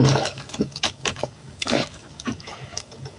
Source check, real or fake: fake